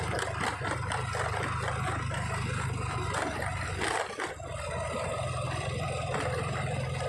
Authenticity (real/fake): real